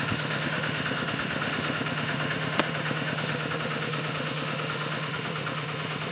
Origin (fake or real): fake